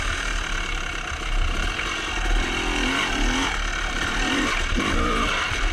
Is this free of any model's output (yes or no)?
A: yes